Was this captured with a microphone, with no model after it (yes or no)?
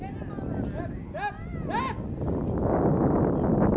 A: yes